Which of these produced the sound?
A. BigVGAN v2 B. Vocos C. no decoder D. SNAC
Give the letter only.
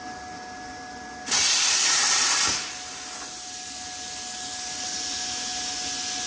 C